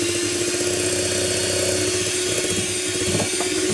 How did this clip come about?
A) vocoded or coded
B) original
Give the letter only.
B